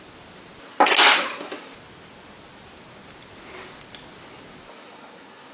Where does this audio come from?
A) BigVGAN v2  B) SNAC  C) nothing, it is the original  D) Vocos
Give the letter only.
C